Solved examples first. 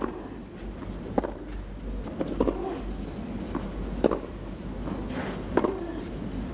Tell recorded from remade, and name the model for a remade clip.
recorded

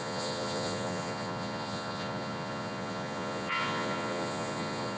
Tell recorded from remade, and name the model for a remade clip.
remade, vocoder, Vocos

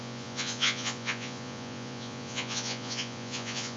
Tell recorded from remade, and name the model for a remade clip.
remade, vocoder, Vocos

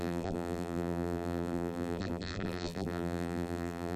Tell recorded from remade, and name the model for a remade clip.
remade, vocoder, BigVGAN v2